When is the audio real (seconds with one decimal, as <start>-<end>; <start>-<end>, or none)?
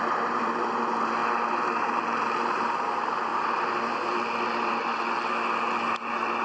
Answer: 1.2-1.8; 3.3-6.4